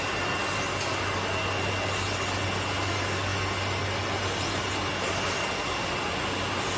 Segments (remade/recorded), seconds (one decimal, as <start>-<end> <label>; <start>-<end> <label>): 0.0-6.8 recorded

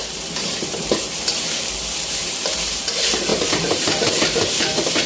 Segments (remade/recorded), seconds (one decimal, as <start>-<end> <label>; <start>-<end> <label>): 0.0-2.2 recorded; 2.2-2.8 remade; 2.8-3.3 recorded; 3.3-4.1 remade; 4.1-5.1 recorded